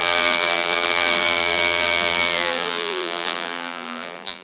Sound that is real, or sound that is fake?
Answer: fake